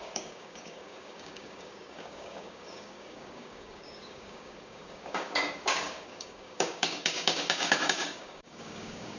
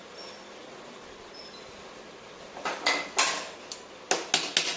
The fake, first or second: first